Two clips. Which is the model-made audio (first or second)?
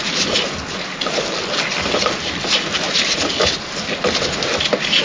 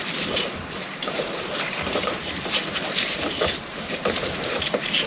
second